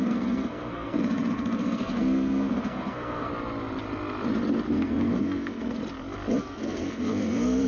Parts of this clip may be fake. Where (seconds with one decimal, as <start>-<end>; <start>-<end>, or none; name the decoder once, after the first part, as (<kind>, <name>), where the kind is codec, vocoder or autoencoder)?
0.0-3.3 (codec, SNAC); 4.7-5.8; 6.4-7.7